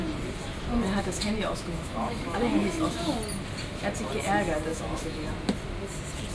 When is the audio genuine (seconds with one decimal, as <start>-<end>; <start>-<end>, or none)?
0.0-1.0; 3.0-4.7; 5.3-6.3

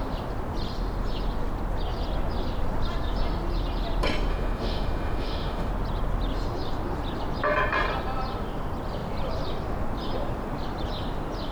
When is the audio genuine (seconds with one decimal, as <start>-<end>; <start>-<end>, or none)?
0.0-4.3; 5.7-11.5

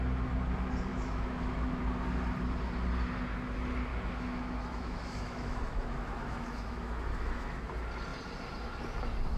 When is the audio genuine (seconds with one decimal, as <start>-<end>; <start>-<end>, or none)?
0.0-0.9; 1.8-3.9; 7.7-9.4